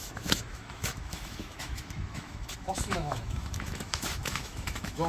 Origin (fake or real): fake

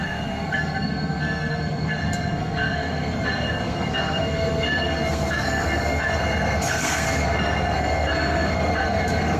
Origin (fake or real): fake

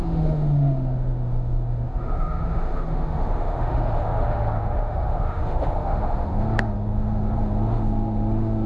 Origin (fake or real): fake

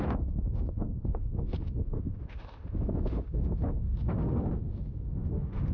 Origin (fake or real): fake